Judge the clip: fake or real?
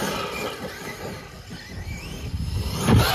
real